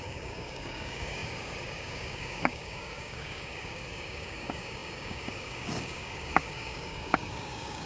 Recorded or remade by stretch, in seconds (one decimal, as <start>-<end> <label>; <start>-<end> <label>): 0.0-7.9 remade